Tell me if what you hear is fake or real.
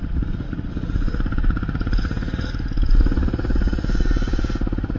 fake